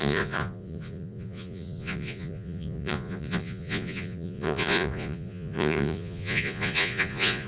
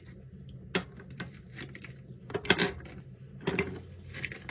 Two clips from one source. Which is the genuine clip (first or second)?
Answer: second